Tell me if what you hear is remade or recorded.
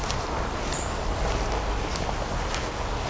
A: recorded